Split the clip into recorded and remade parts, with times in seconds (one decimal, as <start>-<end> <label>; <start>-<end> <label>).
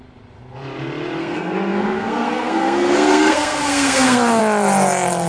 0.0-1.2 recorded; 1.2-4.4 remade; 4.4-5.3 recorded